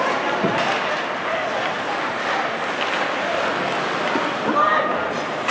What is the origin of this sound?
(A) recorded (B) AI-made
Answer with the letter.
A